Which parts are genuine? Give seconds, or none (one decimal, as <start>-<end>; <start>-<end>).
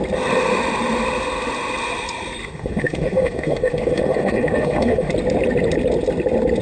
0.0-2.4; 5.1-6.6